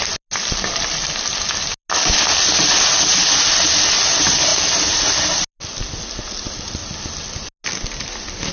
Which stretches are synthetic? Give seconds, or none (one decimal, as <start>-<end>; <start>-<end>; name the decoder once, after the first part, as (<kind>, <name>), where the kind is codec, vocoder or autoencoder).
none